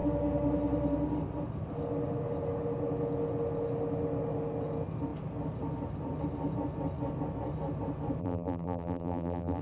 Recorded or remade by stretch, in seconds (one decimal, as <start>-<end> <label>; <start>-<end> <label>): 0.0-8.2 recorded; 8.2-9.6 remade